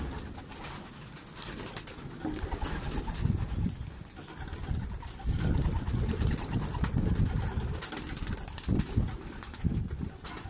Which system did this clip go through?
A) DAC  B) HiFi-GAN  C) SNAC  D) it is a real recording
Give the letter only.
D